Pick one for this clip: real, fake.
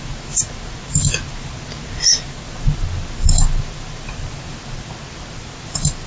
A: real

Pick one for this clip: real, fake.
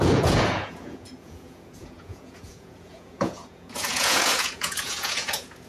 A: fake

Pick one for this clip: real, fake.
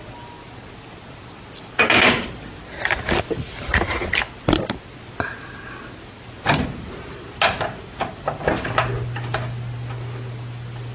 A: real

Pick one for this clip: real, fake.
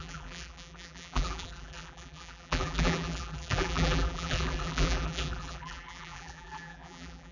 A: fake